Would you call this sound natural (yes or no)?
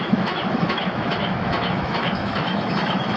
no